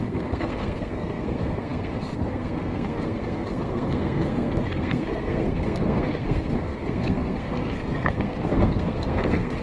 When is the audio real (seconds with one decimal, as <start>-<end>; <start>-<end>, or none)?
none